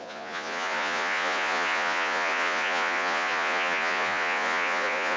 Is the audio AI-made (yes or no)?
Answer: yes